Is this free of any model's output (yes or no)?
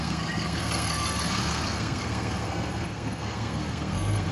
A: no